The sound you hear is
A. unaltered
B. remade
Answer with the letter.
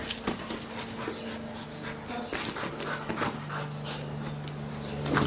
A